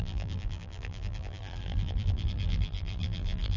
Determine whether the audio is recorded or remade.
remade